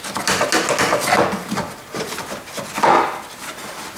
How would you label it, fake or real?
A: real